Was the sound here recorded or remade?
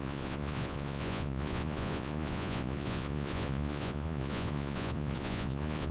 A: remade